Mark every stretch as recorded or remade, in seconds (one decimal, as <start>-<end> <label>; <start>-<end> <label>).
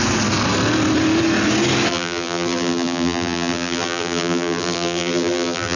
0.0-1.9 recorded; 1.9-5.8 remade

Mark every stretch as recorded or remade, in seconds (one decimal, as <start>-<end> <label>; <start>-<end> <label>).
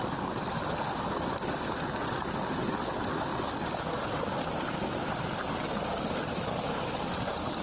0.0-3.3 recorded; 3.3-6.7 remade; 6.7-7.6 recorded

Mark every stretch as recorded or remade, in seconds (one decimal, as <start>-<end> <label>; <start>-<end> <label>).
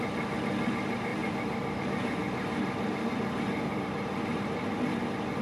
0.0-1.1 recorded; 1.1-1.8 remade; 1.8-2.2 recorded; 2.2-5.0 remade; 5.0-5.4 recorded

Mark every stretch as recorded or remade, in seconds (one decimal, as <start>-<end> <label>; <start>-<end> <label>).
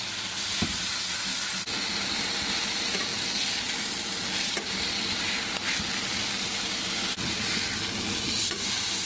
0.0-1.3 remade; 1.3-2.0 recorded; 2.0-3.1 remade; 3.1-6.3 recorded; 6.3-9.1 remade